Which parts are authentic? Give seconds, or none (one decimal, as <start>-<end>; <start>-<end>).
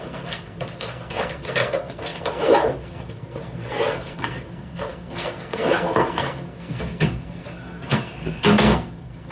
none